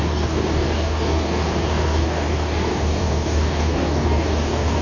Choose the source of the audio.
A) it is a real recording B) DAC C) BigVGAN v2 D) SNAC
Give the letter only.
B